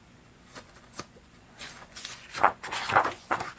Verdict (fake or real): fake